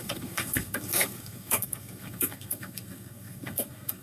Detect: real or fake fake